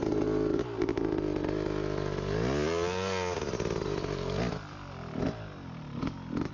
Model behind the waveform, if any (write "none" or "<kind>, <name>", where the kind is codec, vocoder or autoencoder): none